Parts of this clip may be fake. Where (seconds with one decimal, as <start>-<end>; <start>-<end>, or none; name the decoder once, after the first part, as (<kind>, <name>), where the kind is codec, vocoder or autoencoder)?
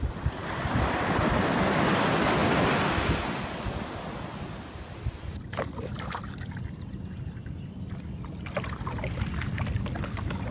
none